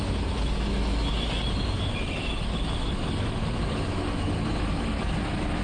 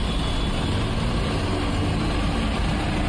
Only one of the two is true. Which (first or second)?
second